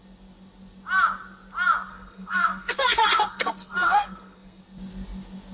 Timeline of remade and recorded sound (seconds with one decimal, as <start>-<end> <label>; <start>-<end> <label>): 0.0-1.9 recorded; 1.9-4.6 remade; 4.6-5.5 recorded